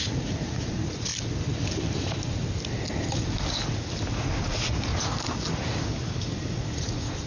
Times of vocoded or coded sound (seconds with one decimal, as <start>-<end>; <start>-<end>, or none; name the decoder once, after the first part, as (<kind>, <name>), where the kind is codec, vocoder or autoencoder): 0.0-1.1 (vocoder, Vocos); 4.4-4.9; 6.5-7.3